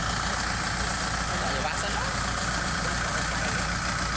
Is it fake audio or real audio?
real